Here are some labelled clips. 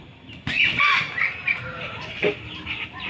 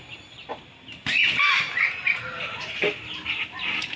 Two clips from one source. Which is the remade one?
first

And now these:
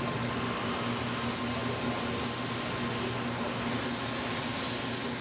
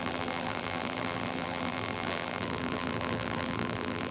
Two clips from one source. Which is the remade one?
second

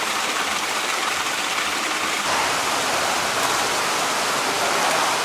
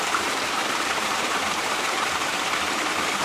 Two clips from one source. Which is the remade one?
second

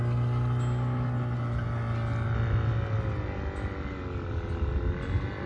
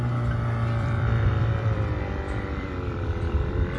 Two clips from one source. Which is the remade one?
second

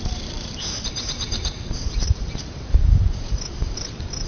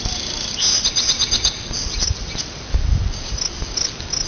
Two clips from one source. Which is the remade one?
first